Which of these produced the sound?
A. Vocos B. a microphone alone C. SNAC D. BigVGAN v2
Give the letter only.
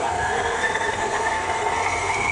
C